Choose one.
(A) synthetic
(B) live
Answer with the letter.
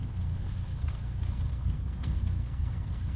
A